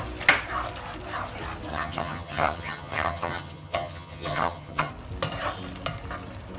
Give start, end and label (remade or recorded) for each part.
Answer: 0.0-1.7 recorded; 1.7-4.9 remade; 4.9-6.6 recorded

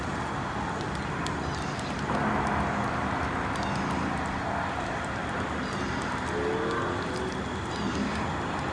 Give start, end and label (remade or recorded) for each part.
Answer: 0.0-5.2 recorded; 5.2-5.8 remade; 5.8-8.7 recorded

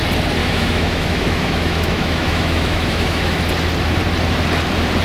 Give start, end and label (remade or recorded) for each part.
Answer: 0.0-0.4 recorded; 0.4-3.4 remade; 3.4-5.0 recorded

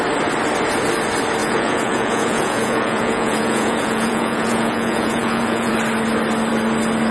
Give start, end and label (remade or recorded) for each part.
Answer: 0.0-1.4 recorded; 1.4-5.7 remade; 5.7-7.1 recorded

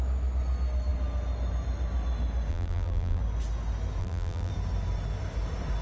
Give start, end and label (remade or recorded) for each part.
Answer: 0.0-2.5 recorded; 2.5-3.2 remade; 3.2-4.0 recorded; 4.0-4.5 remade; 4.5-5.8 recorded

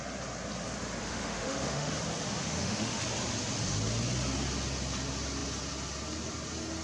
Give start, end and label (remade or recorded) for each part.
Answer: 0.0-1.0 recorded; 1.0-1.9 remade; 1.9-2.4 recorded; 2.4-3.0 remade; 3.0-6.8 recorded

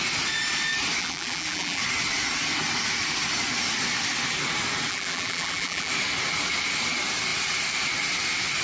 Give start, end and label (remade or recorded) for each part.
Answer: 0.0-1.0 recorded; 1.0-1.8 remade; 1.8-4.9 recorded; 4.9-5.9 remade; 5.9-8.6 recorded